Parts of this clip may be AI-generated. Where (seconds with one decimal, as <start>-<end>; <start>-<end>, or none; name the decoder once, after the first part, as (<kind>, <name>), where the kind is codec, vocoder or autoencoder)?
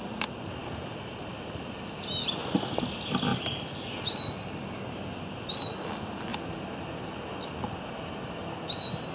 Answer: none